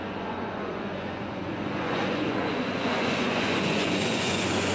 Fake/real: fake